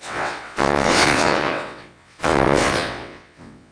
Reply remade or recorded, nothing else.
remade